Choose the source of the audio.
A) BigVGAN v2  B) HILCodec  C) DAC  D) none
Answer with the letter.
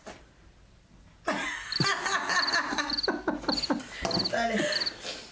D